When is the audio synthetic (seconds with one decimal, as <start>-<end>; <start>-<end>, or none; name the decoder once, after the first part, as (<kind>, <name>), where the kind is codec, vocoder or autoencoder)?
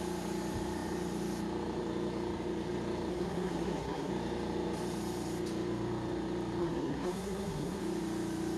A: 3.1-4.1 (codec, SNAC); 6.6-7.8